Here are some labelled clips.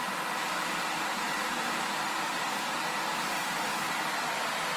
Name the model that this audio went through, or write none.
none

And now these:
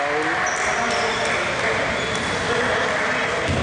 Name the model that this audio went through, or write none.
none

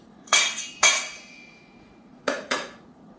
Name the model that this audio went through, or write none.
vocoder, Vocos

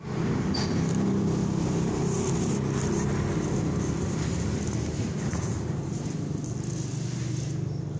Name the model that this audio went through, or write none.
none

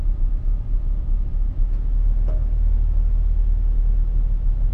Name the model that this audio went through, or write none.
none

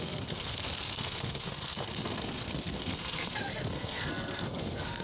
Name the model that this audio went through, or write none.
codec, SNAC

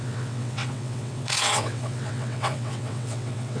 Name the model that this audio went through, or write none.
vocoder, WaveNeXt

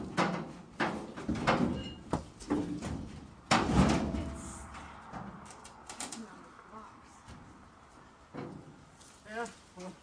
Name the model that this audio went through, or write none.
vocoder, BigVGAN v2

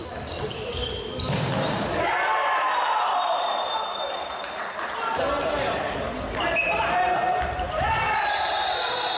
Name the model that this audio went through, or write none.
none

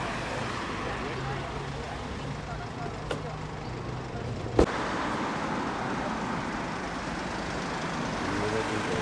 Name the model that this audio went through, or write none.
none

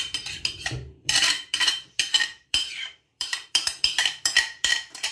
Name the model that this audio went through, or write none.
vocoder, BigVGAN v2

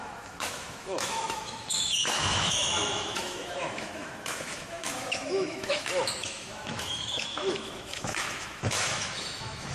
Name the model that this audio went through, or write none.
autoencoder, DAC-VAE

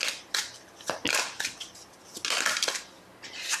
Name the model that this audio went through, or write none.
none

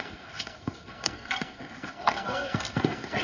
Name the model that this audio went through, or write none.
codec, SNAC